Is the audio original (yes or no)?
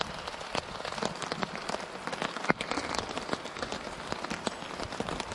yes